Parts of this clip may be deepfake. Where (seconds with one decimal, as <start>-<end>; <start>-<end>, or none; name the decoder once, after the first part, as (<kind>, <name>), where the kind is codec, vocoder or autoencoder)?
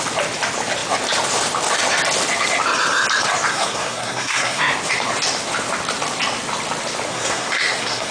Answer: 3.5-4.6 (codec, SNAC); 7.1-8.1